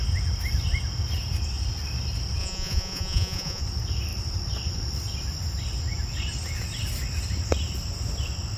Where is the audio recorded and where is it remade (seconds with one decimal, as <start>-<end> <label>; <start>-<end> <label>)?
0.0-2.4 recorded; 2.4-3.6 remade; 3.6-8.6 recorded